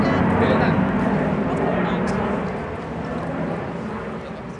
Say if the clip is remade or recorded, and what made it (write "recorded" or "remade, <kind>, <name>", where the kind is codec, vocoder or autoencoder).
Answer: recorded